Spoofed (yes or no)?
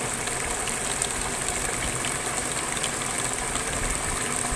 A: no